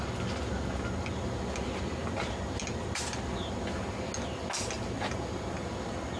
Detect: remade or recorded recorded